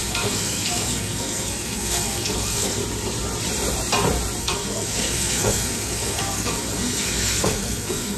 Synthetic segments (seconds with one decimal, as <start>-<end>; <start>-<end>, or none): 0.0-2.8; 4.4-8.2